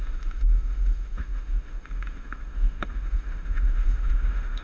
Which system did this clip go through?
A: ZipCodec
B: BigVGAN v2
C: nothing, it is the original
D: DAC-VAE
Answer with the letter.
D